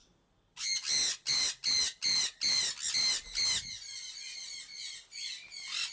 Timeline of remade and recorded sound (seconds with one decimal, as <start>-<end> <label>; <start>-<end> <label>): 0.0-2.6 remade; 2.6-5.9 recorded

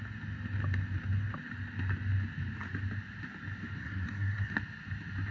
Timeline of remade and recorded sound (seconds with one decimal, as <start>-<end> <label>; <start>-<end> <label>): 0.0-3.8 recorded; 3.8-4.5 remade; 4.5-5.3 recorded

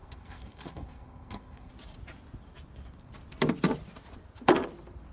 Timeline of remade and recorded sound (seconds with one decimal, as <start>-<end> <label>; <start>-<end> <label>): 0.0-1.7 remade; 1.7-5.1 recorded